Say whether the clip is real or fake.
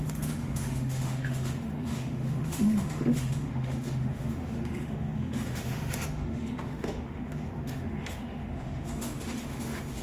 fake